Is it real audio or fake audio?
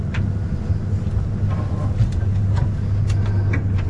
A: real